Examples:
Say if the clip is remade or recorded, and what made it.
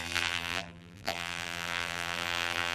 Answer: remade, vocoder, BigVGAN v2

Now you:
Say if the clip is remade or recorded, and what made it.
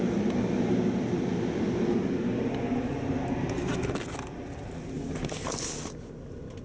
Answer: recorded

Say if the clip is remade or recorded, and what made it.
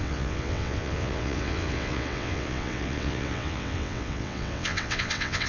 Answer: remade, vocoder, WaveNeXt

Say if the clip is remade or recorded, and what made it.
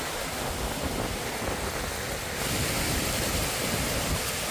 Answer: recorded